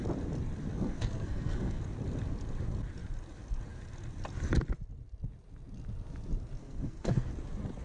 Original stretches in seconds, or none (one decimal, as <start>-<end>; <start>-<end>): 0.0-0.7; 1.8-6.6; 7.3-7.8